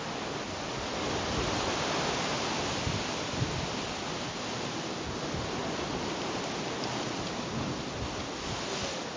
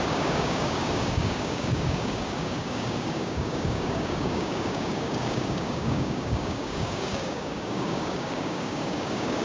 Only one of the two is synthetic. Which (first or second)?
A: second